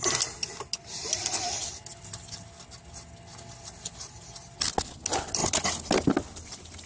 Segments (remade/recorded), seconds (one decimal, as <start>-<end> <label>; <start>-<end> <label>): 0.0-6.9 recorded